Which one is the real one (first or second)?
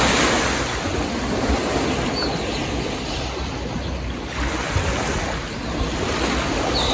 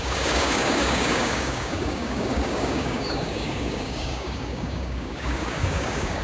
first